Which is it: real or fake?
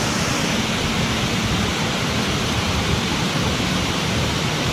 real